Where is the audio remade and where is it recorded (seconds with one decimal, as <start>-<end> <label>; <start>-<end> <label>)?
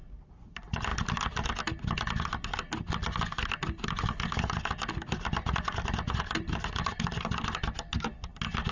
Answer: 0.0-8.7 recorded